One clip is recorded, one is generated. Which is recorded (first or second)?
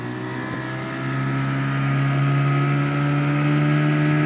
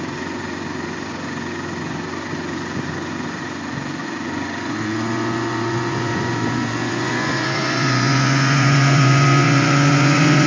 first